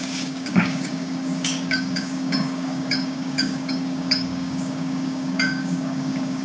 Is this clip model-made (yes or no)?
yes